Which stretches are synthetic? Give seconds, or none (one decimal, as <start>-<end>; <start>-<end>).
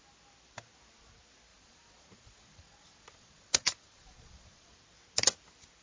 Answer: 1.5-4.8